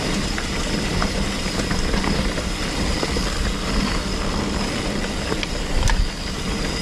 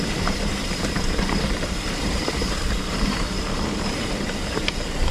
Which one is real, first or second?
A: first